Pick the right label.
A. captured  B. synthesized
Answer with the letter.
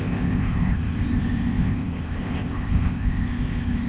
B